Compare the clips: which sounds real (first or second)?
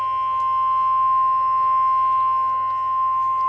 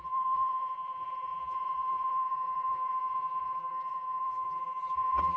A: first